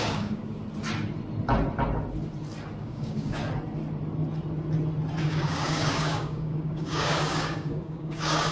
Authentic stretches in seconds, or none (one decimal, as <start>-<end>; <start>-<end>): 0.6-2.8; 3.4-5.2